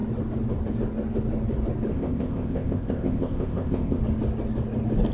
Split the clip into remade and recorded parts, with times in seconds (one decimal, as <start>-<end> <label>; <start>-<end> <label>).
0.0-1.9 recorded; 1.9-4.0 remade; 4.0-5.1 recorded